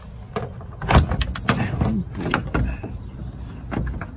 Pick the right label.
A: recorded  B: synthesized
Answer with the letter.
A